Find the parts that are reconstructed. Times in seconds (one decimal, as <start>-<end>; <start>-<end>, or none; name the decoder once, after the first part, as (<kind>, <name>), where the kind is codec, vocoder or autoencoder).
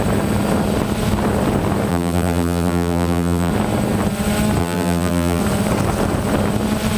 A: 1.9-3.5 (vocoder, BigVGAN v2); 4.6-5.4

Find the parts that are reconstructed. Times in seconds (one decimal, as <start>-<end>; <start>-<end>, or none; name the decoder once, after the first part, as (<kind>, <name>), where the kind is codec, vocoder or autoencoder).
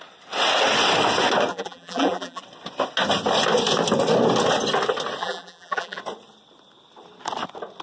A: 1.5-2.4 (vocoder, BigVGAN v2); 5.2-6.0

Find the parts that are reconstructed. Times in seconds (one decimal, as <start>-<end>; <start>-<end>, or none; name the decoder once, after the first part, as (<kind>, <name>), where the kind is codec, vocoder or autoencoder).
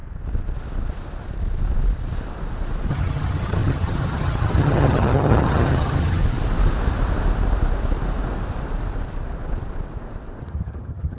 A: 2.9-6.2 (vocoder, HiFi-GAN); 10.4-11.2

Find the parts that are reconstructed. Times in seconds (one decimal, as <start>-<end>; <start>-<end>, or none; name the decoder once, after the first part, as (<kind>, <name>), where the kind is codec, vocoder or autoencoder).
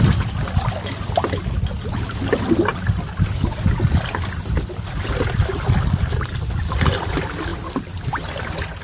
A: none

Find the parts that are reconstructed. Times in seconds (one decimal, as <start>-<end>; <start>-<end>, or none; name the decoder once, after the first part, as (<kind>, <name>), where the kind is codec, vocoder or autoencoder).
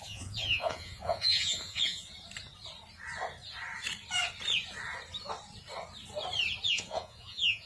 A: 0.0-2.1 (vocoder, Vocos); 6.7-7.7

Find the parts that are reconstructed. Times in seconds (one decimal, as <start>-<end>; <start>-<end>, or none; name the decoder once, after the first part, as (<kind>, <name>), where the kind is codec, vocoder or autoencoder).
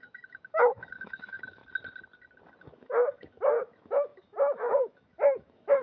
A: 0.0-1.6 (autoencoder, DAC-VAE); 2.6-5.8